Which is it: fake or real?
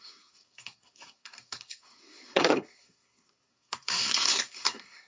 fake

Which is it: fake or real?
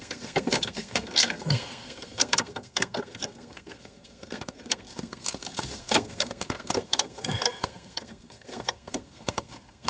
fake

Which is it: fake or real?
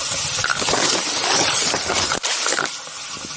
real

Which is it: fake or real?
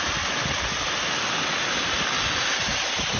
real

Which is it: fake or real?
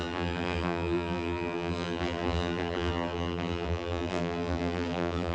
fake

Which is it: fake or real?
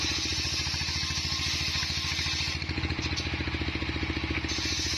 real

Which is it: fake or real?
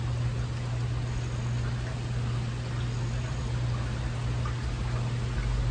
real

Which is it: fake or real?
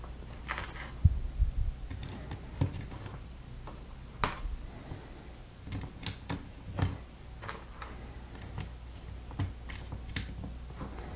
real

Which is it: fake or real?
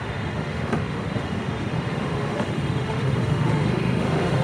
fake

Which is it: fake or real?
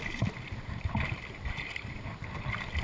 real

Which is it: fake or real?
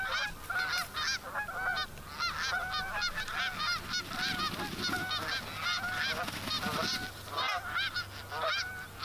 real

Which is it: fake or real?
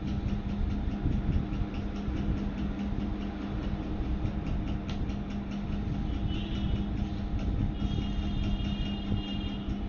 real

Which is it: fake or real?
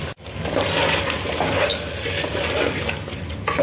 real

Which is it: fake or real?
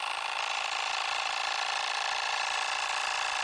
real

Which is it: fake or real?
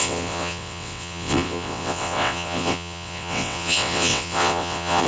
fake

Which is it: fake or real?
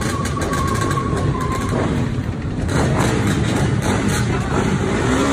fake